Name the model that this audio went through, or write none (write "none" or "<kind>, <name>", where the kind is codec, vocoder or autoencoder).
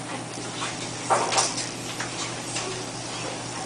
none